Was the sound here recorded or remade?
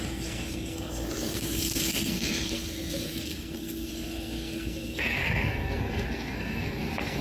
remade